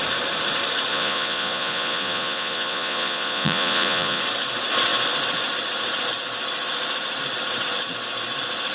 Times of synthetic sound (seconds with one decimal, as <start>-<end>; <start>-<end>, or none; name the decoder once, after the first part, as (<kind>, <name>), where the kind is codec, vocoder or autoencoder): 0.9-4.2 (vocoder, Vocos)